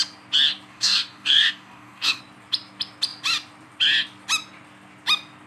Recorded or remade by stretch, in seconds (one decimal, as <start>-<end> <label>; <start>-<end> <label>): 0.0-0.7 recorded; 0.7-2.2 remade; 2.2-5.5 recorded